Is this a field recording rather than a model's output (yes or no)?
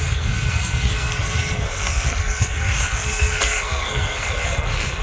no